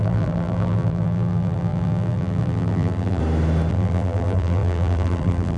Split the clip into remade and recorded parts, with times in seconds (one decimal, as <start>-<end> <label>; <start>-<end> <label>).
0.0-3.2 remade; 3.2-3.7 recorded; 3.7-5.6 remade